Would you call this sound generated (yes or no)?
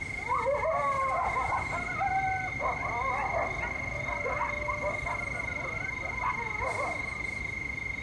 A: no